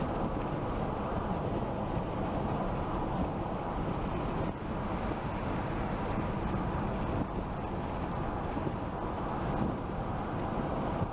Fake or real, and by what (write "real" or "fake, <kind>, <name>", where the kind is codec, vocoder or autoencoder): real